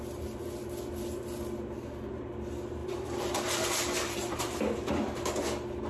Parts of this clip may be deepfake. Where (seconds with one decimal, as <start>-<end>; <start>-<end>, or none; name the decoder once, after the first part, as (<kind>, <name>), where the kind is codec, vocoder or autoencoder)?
2.8-4.4 (vocoder, BigVGAN v2)